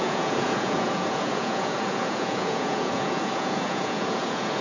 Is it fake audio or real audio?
fake